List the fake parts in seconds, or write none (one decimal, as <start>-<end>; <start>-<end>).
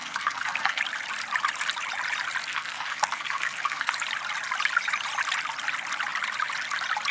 0.0-0.8; 2.4-3.9